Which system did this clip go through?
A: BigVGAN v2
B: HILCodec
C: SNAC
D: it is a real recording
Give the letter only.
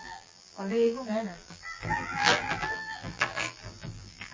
A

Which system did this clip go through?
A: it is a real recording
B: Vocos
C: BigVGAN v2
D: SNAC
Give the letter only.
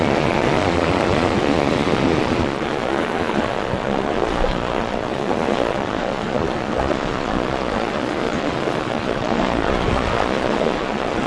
B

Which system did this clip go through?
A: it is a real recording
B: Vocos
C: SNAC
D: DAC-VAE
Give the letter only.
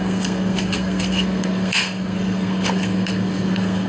C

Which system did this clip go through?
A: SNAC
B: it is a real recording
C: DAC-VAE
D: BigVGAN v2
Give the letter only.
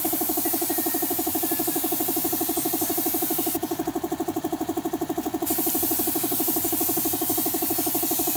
D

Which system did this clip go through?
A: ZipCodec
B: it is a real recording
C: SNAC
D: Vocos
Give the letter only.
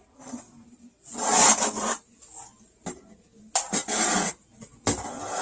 B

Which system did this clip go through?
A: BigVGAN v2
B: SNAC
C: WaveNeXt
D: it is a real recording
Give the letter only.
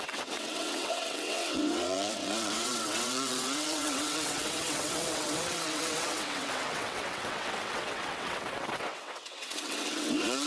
C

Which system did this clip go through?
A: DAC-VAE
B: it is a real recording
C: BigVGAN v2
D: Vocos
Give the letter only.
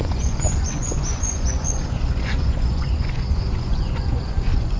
D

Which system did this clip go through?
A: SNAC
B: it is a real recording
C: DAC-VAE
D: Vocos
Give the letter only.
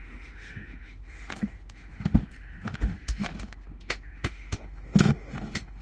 C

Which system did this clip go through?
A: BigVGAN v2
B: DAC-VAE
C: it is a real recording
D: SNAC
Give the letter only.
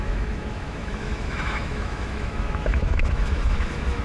B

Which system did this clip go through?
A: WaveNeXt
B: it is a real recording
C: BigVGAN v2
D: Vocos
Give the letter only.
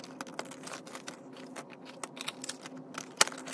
B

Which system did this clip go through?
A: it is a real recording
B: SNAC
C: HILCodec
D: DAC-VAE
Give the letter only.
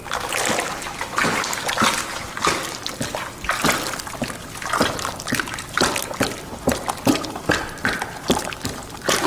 A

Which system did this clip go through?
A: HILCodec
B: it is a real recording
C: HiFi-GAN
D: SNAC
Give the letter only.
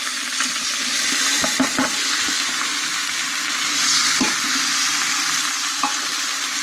B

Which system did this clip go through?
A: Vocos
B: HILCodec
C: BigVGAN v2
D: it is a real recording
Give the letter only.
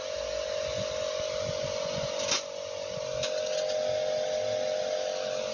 D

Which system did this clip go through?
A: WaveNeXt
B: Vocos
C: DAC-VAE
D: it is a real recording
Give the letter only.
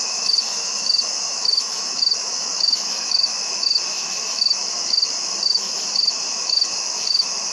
C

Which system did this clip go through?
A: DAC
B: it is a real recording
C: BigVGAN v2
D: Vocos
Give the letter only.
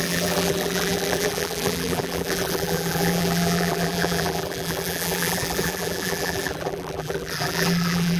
C